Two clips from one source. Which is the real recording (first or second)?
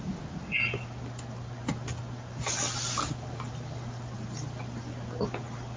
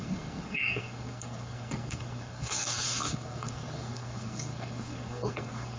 first